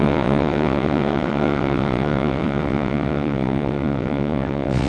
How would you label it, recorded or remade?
remade